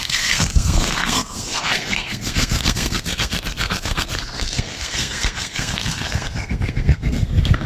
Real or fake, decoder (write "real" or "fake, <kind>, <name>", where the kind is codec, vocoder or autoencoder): fake, codec, SNAC